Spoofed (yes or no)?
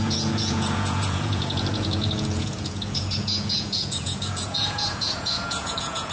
yes